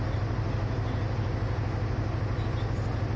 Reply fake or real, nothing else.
real